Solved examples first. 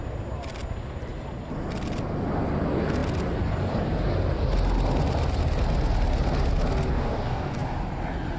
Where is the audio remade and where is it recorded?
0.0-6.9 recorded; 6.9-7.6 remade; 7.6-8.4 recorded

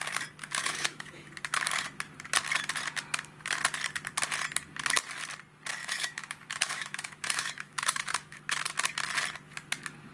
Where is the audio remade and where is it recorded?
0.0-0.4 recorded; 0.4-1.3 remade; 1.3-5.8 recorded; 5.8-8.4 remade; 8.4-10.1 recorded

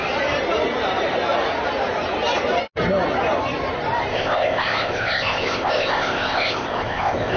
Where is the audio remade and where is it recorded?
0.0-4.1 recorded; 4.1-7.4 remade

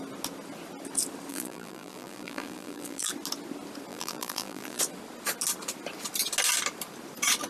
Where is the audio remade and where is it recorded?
0.0-1.3 recorded; 1.3-3.1 remade; 3.1-3.9 recorded; 3.9-4.8 remade; 4.8-7.5 recorded

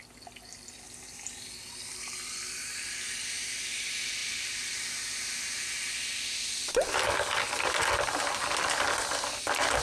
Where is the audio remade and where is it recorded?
0.0-9.8 recorded

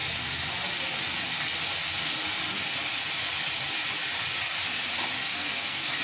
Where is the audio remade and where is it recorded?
0.0-5.3 recorded; 5.3-6.0 remade